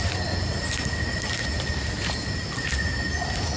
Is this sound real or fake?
real